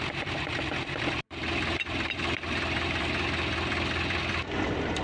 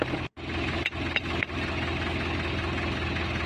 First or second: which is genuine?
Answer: second